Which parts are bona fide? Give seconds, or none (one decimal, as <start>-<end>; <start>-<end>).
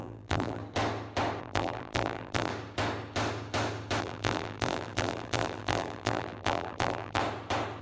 0.6-1.4; 2.5-4.0; 7.2-7.8